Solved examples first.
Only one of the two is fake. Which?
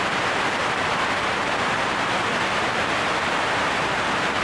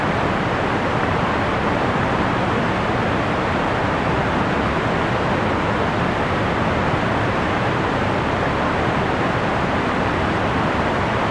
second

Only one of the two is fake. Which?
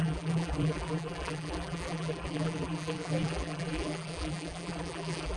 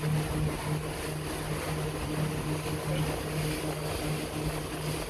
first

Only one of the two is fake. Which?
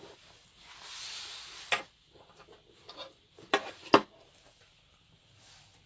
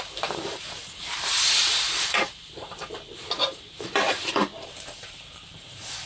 second